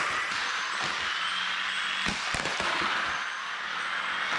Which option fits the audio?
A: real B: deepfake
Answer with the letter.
A